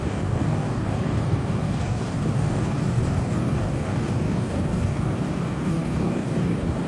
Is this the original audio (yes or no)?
no